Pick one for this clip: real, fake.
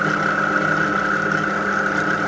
real